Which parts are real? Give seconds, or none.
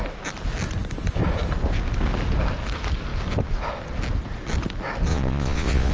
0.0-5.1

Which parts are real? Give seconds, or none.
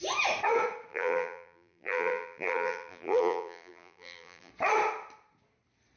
0.0-0.9; 4.5-6.0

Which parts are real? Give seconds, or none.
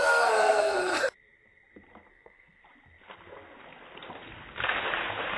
0.9-2.1; 2.6-5.4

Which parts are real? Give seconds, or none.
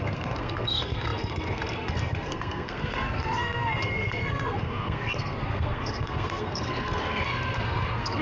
none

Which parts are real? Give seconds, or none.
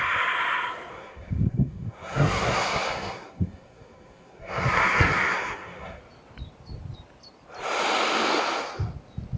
0.0-0.9; 6.0-9.4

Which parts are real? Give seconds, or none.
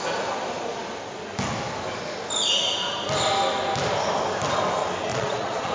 0.0-5.1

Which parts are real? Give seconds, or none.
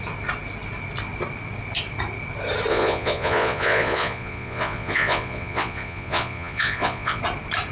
0.0-2.7; 7.2-7.7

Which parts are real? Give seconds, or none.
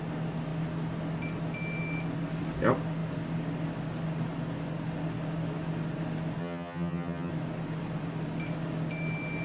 0.0-6.4; 7.3-9.4